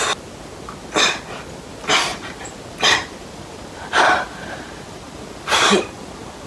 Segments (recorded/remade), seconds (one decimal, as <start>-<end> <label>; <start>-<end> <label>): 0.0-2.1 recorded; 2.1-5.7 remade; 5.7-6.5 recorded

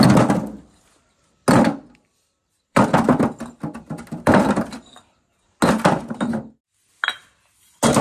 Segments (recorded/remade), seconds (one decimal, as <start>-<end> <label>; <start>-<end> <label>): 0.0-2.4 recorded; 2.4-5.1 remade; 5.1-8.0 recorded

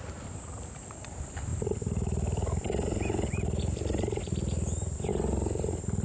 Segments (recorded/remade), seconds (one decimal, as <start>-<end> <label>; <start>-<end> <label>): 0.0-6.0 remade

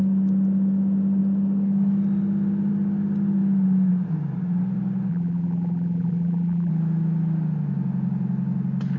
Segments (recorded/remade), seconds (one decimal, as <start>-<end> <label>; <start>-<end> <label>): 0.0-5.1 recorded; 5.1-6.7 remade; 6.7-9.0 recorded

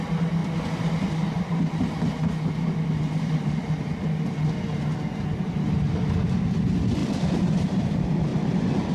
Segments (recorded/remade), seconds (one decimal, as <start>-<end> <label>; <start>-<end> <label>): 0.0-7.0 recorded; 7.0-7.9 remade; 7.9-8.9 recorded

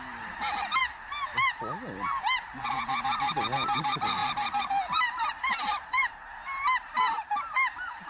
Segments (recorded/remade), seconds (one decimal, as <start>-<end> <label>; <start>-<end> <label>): 0.0-0.8 remade; 0.8-3.8 recorded; 3.8-6.0 remade; 6.0-8.1 recorded

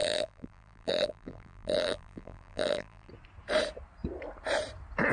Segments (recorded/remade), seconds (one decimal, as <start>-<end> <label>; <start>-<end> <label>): 0.0-3.1 remade; 3.1-5.1 recorded